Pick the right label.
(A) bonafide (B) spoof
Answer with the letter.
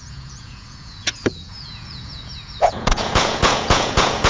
B